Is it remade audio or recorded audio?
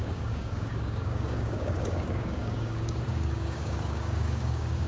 remade